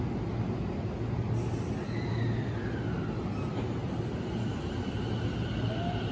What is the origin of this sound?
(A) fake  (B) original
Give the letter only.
B